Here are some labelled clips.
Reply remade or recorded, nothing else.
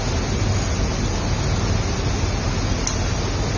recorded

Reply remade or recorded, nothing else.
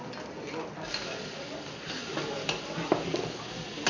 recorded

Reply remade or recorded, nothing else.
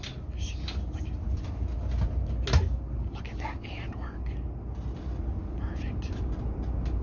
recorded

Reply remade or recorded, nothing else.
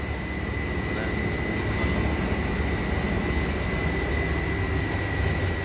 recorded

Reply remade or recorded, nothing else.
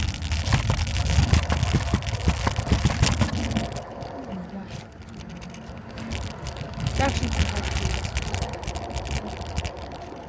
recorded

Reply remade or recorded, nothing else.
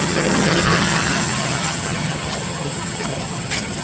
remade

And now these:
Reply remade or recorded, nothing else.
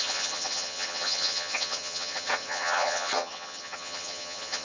remade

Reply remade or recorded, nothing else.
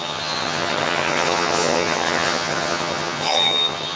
remade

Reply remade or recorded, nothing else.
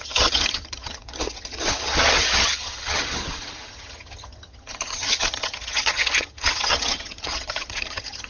remade